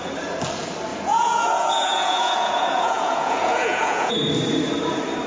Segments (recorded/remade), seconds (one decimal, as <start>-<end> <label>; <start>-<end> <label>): 0.0-0.9 recorded; 0.9-4.1 remade; 4.1-5.3 recorded